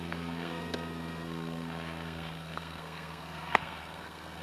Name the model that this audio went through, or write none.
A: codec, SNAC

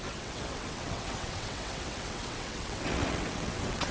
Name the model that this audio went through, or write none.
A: vocoder, WaveNeXt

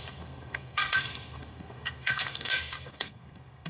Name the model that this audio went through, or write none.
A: codec, SNAC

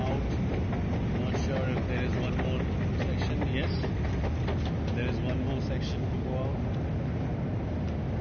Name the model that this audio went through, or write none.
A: none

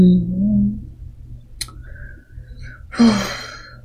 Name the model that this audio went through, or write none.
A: none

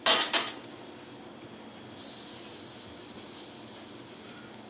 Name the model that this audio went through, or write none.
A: none